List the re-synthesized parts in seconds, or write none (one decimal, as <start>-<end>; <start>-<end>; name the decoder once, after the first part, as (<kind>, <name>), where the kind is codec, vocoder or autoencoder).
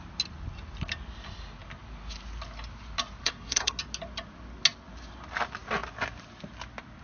3.2-3.8 (codec, SNAC)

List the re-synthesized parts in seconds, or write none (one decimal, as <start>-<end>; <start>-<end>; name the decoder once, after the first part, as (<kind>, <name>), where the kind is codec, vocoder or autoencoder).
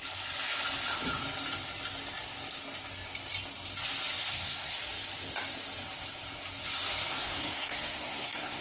4.2-4.8 (codec, SNAC); 7.1-8.6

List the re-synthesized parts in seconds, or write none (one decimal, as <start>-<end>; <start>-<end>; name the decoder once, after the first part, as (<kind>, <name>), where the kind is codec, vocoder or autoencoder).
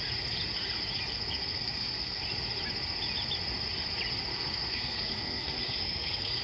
1.4-2.2 (codec, SNAC); 4.3-6.4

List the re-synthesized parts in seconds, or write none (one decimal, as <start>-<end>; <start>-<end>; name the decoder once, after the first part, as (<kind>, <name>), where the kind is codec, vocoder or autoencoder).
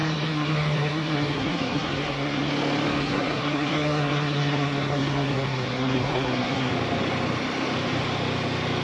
0.0-2.5 (codec, SNAC); 3.0-6.7